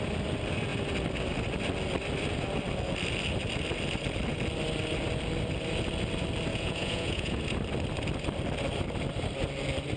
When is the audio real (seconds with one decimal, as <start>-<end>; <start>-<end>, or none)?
0.0-6.5; 7.4-10.0